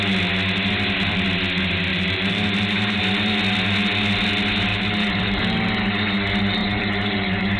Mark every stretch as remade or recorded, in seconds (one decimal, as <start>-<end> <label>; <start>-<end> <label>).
0.0-1.9 recorded; 1.9-3.0 remade; 3.0-4.7 recorded; 4.7-5.4 remade; 5.4-6.6 recorded; 6.6-7.6 remade